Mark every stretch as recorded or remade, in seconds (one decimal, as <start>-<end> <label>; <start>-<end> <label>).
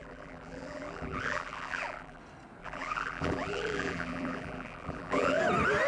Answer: 0.0-2.2 remade; 2.2-2.6 recorded; 2.6-5.4 remade; 5.4-5.9 recorded